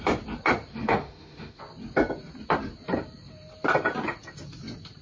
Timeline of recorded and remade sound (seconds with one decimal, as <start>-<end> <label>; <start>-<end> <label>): 0.0-0.7 recorded; 0.7-1.6 remade; 1.6-5.0 recorded